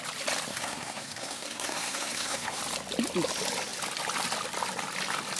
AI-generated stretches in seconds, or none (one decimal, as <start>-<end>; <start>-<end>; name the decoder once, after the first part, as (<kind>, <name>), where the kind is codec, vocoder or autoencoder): 0.5-2.6 (codec, SNAC)